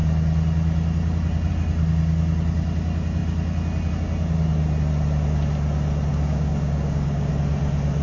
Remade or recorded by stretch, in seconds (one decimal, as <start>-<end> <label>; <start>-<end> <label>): 0.0-6.1 recorded; 6.1-7.3 remade; 7.3-8.0 recorded